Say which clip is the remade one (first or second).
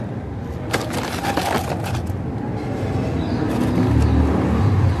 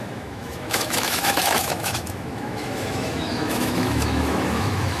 second